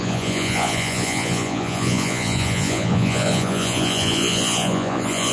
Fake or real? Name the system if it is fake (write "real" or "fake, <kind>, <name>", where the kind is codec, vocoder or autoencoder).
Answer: fake, vocoder, Vocos